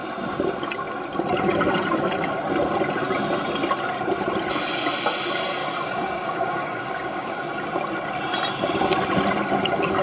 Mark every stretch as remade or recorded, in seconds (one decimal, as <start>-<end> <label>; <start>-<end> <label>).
0.0-5.6 recorded; 5.6-7.4 remade; 7.4-10.0 recorded